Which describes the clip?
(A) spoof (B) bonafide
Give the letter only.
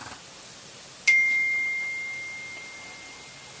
B